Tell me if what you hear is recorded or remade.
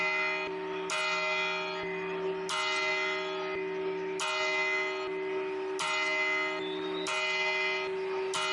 recorded